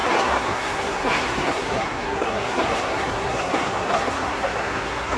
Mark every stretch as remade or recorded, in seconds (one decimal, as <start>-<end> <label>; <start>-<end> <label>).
0.0-5.2 remade